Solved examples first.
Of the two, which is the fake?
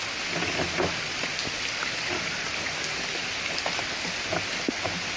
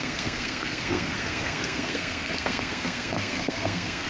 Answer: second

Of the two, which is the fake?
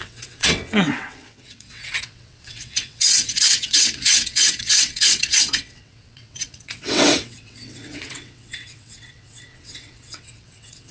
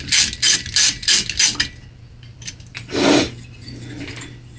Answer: first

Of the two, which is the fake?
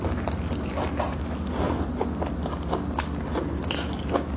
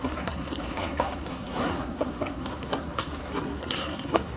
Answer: second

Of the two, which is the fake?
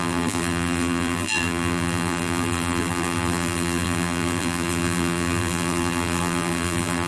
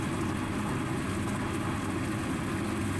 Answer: first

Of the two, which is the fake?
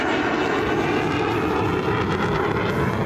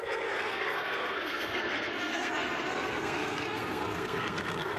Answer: second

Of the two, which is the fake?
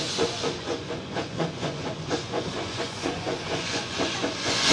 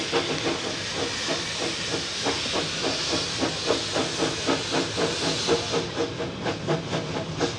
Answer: first